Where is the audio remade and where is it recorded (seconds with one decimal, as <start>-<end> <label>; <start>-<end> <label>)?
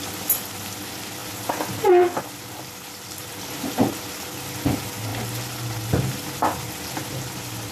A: 0.0-1.2 recorded; 1.2-1.7 remade; 1.7-3.2 recorded; 3.2-3.9 remade; 3.9-7.7 recorded